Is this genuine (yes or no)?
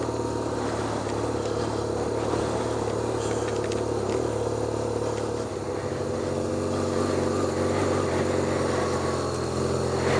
yes